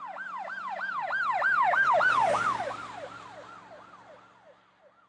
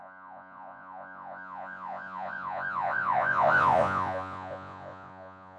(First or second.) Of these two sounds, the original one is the first